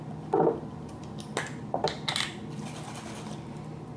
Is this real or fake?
real